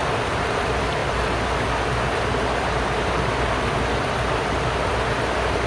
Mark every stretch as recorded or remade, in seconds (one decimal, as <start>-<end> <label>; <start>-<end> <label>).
0.0-5.7 recorded